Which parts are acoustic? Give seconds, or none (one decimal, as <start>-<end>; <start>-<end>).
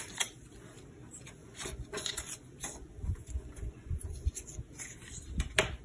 0.0-1.4; 4.6-5.8